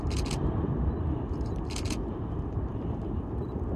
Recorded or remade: recorded